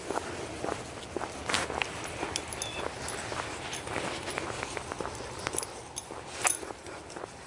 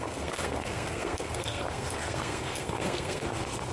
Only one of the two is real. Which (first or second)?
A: first